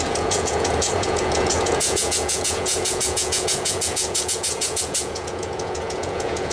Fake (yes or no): yes